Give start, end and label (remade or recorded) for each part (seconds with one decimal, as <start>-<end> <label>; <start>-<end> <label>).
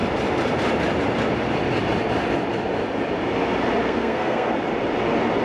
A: 0.0-3.8 recorded; 3.8-4.5 remade; 4.5-5.4 recorded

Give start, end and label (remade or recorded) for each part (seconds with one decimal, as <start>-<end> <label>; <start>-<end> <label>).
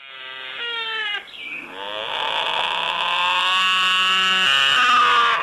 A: 0.0-5.4 recorded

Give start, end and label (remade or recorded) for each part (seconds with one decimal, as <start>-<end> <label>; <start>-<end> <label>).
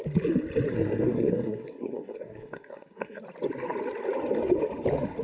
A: 0.0-0.7 recorded; 0.7-3.2 remade; 3.2-5.2 recorded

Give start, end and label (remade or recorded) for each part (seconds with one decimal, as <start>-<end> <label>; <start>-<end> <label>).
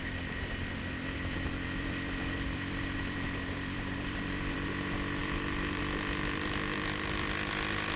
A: 0.0-8.0 remade